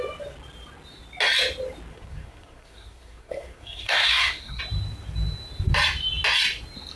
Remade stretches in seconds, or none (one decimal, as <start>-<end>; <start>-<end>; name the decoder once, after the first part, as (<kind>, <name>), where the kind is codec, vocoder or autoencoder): 1.9-4.6 (codec, SNAC)